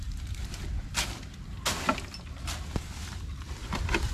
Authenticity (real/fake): real